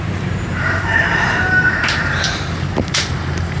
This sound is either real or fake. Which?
fake